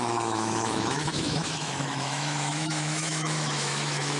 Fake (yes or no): yes